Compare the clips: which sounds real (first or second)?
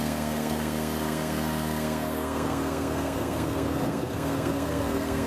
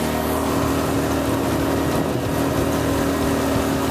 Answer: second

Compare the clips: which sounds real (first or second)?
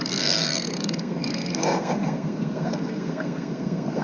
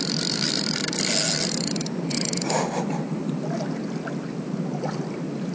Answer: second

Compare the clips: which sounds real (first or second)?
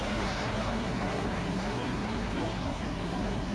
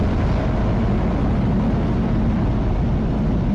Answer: second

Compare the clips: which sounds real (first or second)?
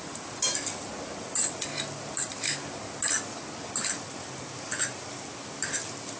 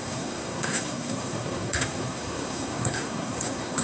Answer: first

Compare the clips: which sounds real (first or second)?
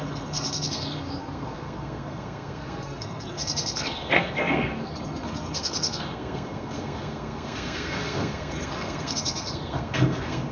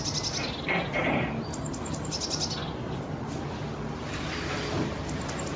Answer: second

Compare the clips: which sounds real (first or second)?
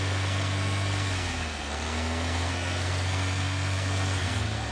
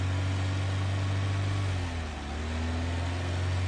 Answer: second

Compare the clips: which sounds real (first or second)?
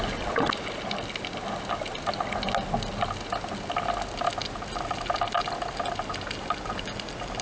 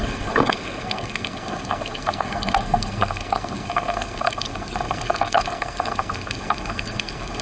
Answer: first